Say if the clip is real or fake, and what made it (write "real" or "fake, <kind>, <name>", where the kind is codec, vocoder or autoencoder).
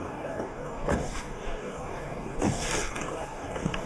fake, codec, DAC